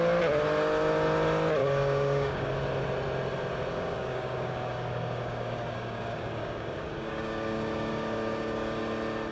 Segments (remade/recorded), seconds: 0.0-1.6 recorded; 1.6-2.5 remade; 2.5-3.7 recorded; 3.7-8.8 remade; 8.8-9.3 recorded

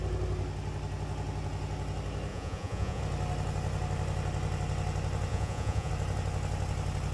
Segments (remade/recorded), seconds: 0.0-2.3 recorded; 2.3-3.0 remade; 3.0-5.3 recorded; 5.3-5.9 remade; 5.9-7.1 recorded